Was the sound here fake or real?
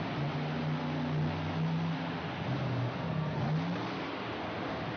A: real